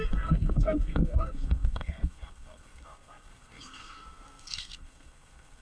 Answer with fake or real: fake